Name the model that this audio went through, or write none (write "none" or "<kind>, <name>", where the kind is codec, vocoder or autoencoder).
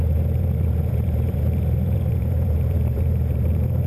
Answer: vocoder, BigVGAN v2